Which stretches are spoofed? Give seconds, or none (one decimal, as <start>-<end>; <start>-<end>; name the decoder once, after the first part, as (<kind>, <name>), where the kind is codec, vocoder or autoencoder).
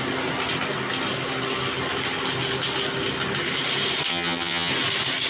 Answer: 4.1-4.7 (vocoder, HiFi-GAN)